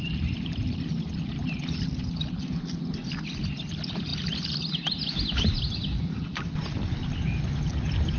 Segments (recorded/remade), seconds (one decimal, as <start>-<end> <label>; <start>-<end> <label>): 0.0-8.2 recorded